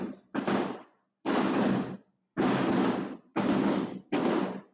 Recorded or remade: remade